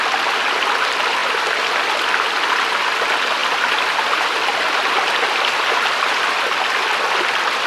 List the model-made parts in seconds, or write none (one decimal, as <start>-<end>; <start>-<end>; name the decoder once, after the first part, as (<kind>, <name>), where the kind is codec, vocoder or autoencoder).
none